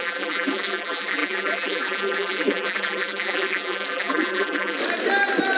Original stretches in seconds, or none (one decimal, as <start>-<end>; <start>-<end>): 4.8-5.6